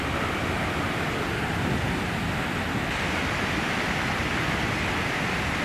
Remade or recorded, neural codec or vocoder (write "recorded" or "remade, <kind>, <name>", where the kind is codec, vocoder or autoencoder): recorded